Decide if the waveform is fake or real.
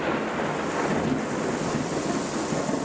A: real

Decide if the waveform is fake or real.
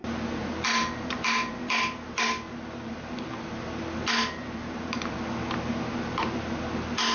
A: real